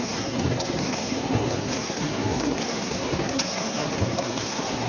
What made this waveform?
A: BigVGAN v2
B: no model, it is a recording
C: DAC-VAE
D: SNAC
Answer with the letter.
D